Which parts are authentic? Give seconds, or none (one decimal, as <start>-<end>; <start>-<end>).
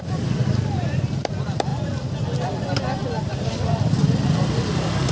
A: 1.7-5.1